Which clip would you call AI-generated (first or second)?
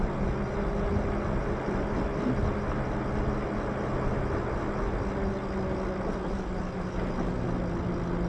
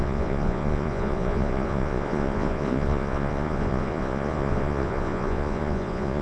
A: second